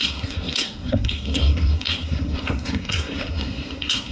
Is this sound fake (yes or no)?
yes